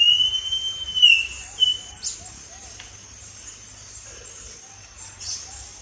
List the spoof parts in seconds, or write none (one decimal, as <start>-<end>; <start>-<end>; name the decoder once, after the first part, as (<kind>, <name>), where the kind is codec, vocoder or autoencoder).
none